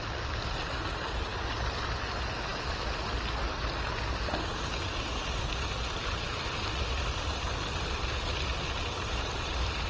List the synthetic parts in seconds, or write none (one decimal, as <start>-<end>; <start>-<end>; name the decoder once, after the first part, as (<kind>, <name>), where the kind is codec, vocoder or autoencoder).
none